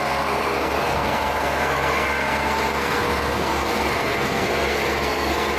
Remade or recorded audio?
remade